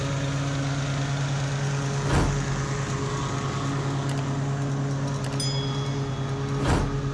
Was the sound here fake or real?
real